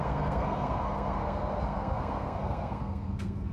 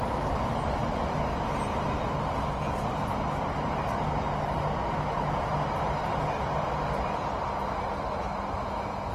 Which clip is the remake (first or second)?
first